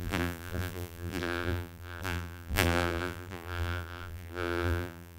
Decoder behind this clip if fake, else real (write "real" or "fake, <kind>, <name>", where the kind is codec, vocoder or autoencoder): fake, vocoder, BigVGAN v2